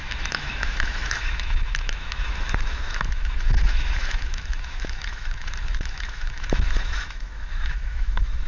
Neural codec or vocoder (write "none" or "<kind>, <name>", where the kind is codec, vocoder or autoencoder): autoencoder, DAC-VAE